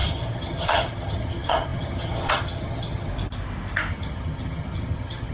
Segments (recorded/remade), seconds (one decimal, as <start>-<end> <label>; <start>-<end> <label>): 0.0-3.1 remade; 3.1-3.9 recorded; 3.9-5.3 remade

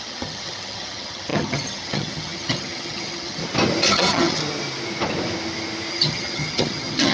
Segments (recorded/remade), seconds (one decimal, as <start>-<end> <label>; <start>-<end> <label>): 0.0-3.4 remade; 3.4-3.9 recorded; 3.9-4.4 remade; 4.4-5.9 recorded; 5.9-7.1 remade

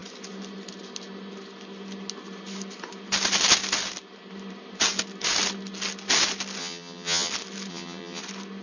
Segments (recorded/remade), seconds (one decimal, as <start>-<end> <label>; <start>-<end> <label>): 0.0-6.6 recorded; 6.6-7.3 remade; 7.3-7.7 recorded; 7.7-8.2 remade; 8.2-8.6 recorded

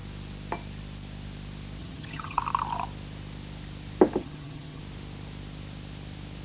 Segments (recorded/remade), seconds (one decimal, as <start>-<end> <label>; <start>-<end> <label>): 0.0-1.8 recorded; 1.8-2.4 remade; 2.4-4.2 recorded; 4.2-4.8 remade; 4.8-6.4 recorded